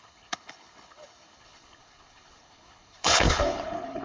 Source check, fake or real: fake